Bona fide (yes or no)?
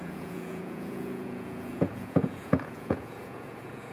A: no